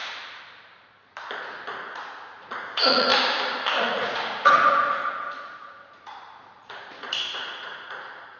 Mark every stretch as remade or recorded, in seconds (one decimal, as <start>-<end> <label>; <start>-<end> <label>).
0.0-1.4 recorded; 1.4-3.1 remade; 3.1-3.8 recorded; 3.8-8.4 remade